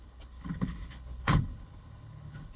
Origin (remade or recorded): remade